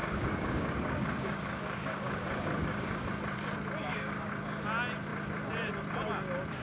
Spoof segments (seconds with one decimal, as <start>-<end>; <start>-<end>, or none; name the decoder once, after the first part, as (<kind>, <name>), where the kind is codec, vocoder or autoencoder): 0.0-3.1 (codec, DAC); 3.8-4.3